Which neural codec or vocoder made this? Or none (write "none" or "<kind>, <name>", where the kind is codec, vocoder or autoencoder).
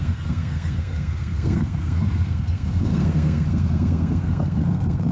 codec, SNAC